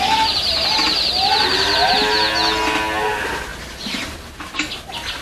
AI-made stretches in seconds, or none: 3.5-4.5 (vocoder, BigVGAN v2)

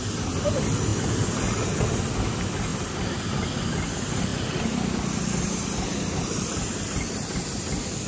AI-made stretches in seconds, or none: 2.7-3.3 (vocoder, BigVGAN v2); 4.3-7.4

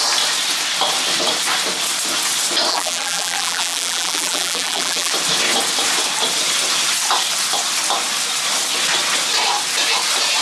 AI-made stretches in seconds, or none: 2.7-5.1 (vocoder, BigVGAN v2)

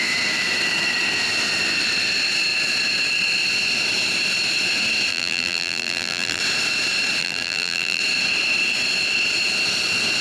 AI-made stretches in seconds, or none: 5.1-6.4 (vocoder, BigVGAN v2); 7.2-8.0

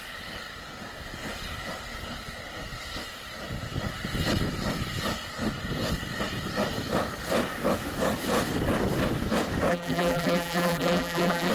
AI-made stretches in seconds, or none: 9.7-11.5 (vocoder, BigVGAN v2)

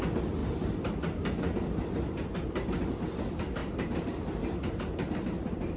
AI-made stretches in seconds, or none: 3.6-5.8 (vocoder, BigVGAN v2)

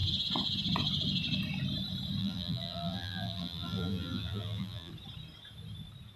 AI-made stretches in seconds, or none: 2.2-4.9 (vocoder, BigVGAN v2)